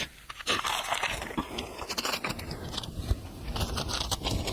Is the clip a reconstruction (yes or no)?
yes